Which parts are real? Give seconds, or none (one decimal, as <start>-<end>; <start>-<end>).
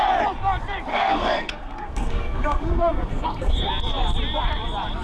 0.0-0.9; 3.7-5.0